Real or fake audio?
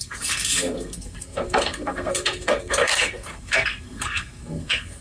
fake